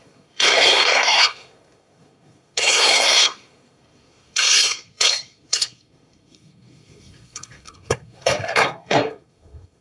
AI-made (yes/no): yes